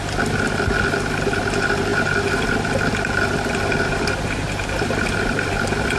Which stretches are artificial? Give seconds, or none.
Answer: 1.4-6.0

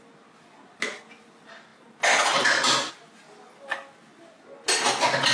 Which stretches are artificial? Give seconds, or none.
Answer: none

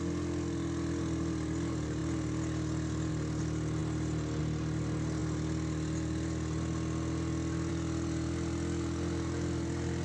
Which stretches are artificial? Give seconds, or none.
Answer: none

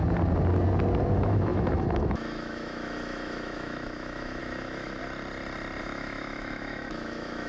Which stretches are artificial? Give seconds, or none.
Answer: 1.1-5.0; 5.8-7.5